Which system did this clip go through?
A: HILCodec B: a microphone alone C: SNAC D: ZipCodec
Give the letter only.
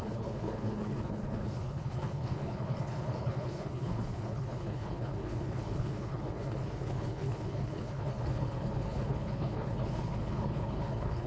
A